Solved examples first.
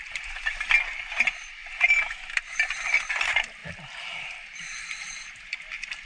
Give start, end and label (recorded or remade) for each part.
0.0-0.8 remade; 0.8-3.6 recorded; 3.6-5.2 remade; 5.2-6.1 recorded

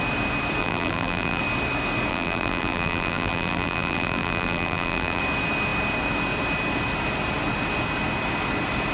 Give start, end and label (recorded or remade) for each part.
0.0-0.6 recorded; 0.6-1.4 remade; 1.4-2.1 recorded; 2.1-5.2 remade; 5.2-8.9 recorded

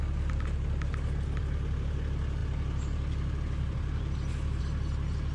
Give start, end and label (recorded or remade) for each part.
0.0-5.3 recorded

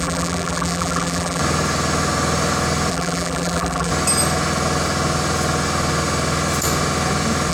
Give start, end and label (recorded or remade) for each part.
0.0-1.4 remade; 1.4-2.9 recorded; 2.9-3.9 remade; 3.9-7.5 recorded

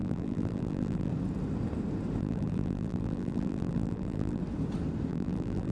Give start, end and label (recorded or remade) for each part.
0.0-1.1 remade; 1.1-2.2 recorded; 2.2-4.4 remade; 4.4-5.1 recorded; 5.1-5.7 remade

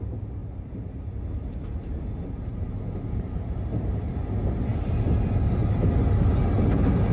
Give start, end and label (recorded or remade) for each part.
0.0-0.4 recorded; 0.4-1.2 remade; 1.2-2.5 recorded; 2.5-4.1 remade; 4.1-7.1 recorded

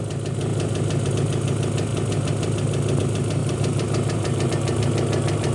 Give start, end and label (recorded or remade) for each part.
0.0-3.4 recorded; 3.4-4.5 remade; 4.5-5.5 recorded

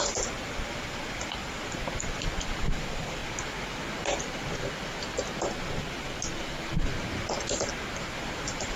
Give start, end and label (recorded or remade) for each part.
0.0-3.2 remade; 3.2-8.0 recorded; 8.0-8.8 remade